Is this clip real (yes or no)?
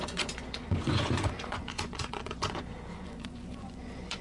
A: no